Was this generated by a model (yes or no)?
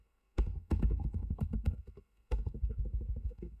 yes